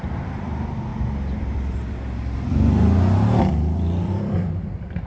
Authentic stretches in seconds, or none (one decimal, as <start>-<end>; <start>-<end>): 0.9-4.0